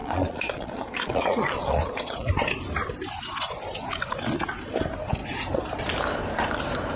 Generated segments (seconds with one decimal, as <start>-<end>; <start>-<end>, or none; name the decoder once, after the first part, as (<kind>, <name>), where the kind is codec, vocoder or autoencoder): 0.0-2.3 (vocoder, Vocos)

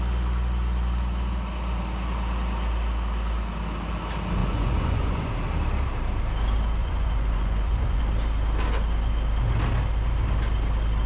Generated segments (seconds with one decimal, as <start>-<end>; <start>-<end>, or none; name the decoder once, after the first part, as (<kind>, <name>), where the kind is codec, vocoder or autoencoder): 4.4-5.3 (vocoder, Vocos); 6.8-8.0

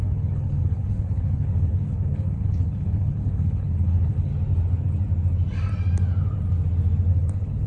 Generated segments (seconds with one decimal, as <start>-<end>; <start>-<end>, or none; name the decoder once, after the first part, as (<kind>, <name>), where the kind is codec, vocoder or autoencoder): 0.0-4.3 (codec, HILCodec); 7.1-7.7

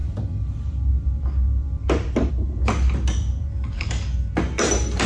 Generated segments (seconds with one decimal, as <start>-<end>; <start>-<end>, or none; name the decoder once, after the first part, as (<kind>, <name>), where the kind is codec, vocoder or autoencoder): 3.5-4.3 (codec, DAC)

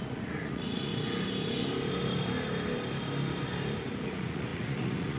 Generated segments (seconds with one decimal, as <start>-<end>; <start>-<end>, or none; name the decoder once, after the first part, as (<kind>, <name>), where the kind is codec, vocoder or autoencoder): 0.0-0.9 (vocoder, Vocos); 4.0-5.2

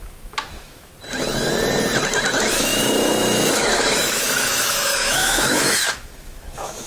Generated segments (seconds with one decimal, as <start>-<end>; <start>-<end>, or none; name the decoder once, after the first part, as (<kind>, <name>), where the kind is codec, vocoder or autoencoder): 0.0-0.9 (autoencoder, DAC-VAE); 2.3-6.9

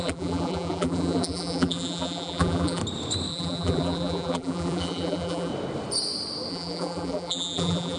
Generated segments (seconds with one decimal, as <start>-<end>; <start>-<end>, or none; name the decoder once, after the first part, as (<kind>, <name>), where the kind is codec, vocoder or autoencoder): 0.0-2.8 (vocoder, BigVGAN v2); 3.3-5.5; 6.5-8.0

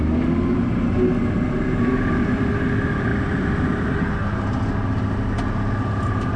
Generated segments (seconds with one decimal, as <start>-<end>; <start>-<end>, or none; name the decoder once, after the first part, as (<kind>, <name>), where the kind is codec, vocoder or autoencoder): 3.1-4.0 (vocoder, BigVGAN v2)